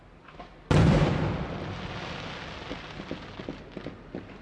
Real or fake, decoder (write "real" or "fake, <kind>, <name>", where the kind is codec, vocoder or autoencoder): real